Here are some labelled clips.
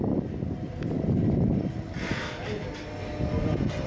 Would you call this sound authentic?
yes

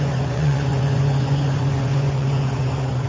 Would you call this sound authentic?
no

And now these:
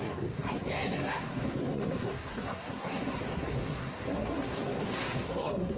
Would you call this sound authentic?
no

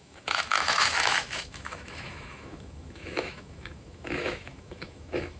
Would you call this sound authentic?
no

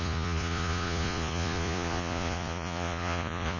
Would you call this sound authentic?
no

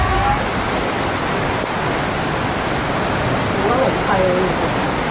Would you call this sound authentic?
yes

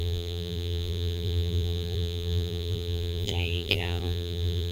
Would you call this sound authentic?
no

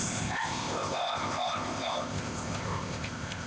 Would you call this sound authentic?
no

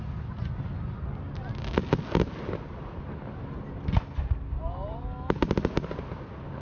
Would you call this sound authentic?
yes